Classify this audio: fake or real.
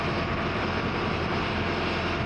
fake